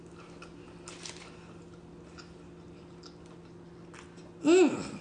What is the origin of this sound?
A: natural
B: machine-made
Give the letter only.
A